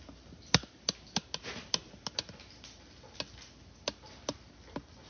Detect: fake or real real